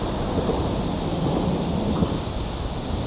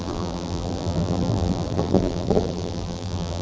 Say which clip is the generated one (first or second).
second